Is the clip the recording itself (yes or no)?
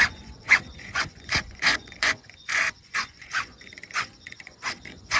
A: no